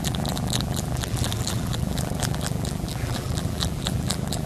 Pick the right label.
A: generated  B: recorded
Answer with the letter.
A